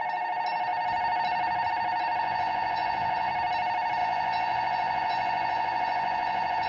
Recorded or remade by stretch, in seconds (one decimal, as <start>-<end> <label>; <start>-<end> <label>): 0.0-2.2 recorded; 2.2-3.3 remade; 3.3-4.0 recorded; 4.0-6.7 remade